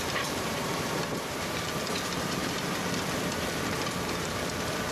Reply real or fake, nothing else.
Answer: fake